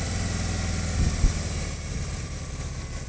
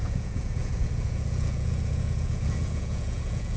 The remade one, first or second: second